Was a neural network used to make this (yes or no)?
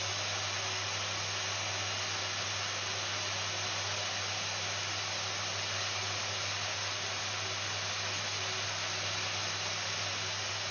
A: no